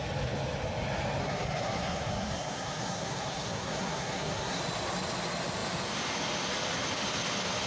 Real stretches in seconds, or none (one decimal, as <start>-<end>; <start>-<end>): 0.0-1.2; 4.6-7.7